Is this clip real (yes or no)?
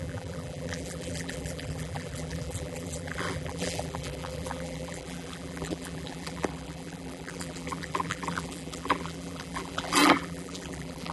no